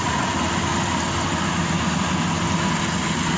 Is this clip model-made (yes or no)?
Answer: no